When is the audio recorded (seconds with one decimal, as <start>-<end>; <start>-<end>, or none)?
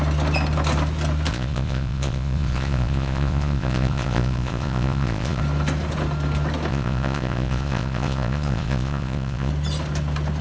0.0-1.3; 5.4-6.7; 9.5-10.4